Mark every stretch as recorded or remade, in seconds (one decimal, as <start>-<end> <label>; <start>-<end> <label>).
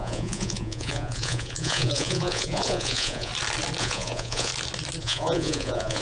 0.0-3.3 remade; 3.3-3.8 recorded; 3.8-4.5 remade; 4.5-5.0 recorded; 5.0-6.0 remade